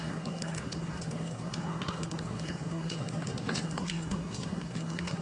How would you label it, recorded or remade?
remade